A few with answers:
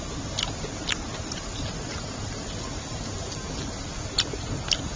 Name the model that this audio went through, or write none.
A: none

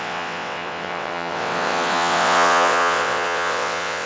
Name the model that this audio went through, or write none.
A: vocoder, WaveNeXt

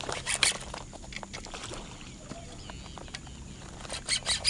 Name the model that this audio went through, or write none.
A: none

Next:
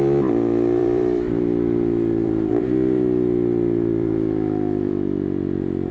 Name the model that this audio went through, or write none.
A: vocoder, BigVGAN v2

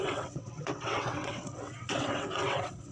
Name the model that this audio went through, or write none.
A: vocoder, WaveNeXt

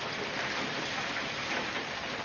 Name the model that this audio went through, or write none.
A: none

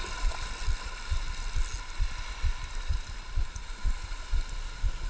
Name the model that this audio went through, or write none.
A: none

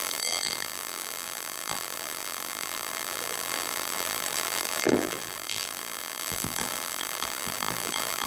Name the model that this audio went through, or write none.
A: vocoder, BigVGAN v2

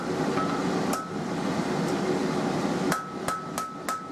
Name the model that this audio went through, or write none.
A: none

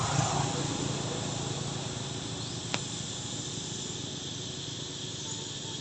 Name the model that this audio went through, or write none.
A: none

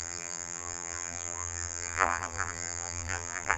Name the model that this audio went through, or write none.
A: vocoder, BigVGAN v2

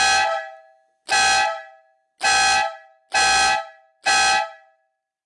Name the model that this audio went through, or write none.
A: none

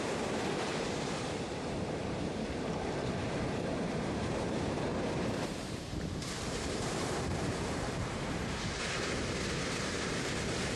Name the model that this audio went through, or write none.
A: vocoder, BigVGAN v2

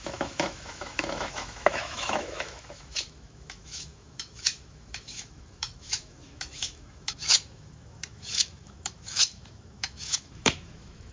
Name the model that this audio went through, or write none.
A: autoencoder, DAC-VAE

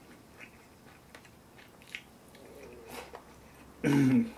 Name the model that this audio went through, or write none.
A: none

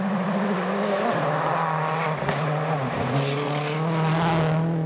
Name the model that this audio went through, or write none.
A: none